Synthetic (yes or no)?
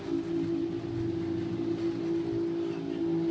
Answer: no